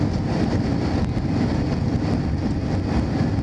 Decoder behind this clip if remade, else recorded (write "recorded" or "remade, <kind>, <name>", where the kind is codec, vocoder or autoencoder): recorded